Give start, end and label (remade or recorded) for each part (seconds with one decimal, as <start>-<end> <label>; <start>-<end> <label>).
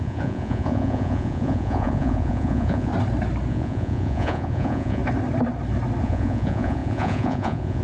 0.0-2.9 remade; 2.9-3.5 recorded; 3.5-5.0 remade; 5.0-6.0 recorded; 6.0-7.8 remade